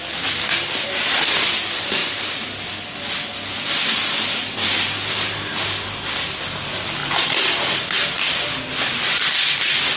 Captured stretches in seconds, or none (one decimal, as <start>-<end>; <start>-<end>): 0.0-10.0

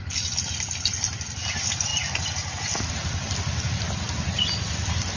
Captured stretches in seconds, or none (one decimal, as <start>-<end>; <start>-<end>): 0.0-5.2

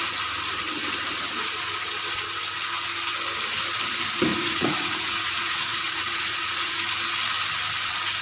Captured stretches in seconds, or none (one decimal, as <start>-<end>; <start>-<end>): 0.0-4.3; 6.8-8.2

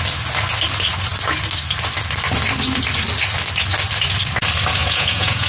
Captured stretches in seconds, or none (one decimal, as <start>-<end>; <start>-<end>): 0.0-4.8

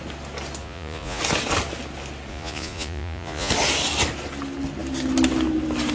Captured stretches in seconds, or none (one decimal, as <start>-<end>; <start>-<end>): 0.0-0.6; 1.2-2.3; 3.5-5.9

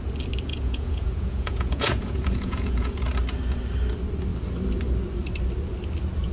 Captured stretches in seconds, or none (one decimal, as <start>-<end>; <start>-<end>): 0.0-0.5; 2.9-6.3